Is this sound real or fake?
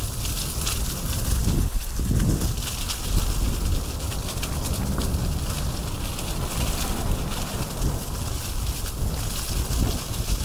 real